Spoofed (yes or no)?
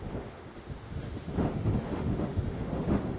yes